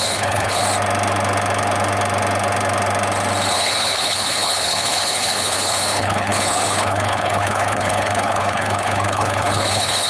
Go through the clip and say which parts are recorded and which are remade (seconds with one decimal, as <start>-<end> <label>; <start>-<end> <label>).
0.0-0.6 remade; 0.6-3.5 recorded; 3.5-10.1 remade